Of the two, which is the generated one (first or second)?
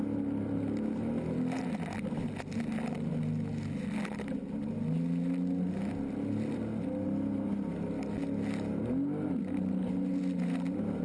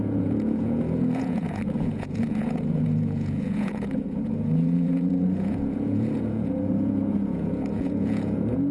second